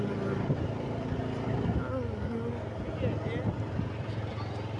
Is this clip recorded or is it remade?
recorded